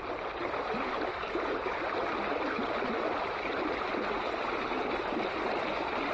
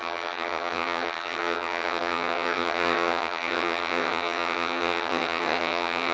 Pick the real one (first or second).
first